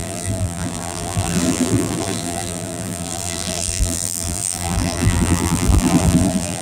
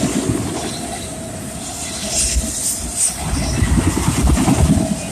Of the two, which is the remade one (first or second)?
first